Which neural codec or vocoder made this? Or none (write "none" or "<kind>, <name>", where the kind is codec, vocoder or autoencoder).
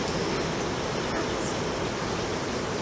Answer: none